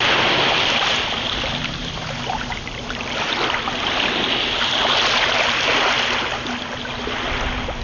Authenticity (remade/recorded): recorded